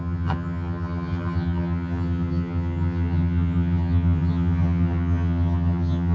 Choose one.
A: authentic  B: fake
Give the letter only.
B